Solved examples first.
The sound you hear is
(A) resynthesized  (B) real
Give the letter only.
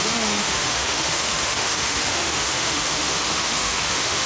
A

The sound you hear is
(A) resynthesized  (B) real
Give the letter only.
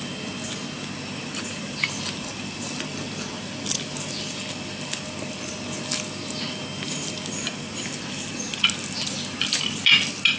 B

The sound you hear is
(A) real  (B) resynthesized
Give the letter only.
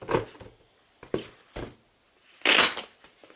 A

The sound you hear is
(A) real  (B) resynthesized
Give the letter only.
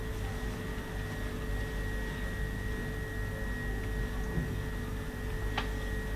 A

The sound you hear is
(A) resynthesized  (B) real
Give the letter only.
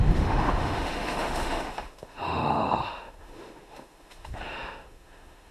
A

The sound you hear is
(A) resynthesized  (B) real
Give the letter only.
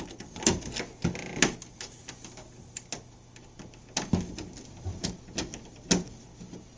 B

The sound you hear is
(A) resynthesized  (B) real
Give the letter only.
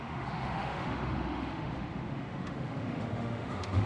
A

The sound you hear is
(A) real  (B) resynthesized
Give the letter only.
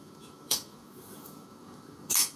B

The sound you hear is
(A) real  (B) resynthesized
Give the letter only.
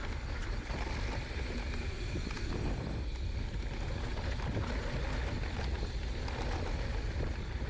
A